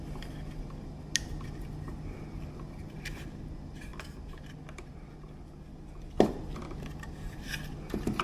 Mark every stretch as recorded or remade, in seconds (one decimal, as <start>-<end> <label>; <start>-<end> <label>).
0.0-8.2 recorded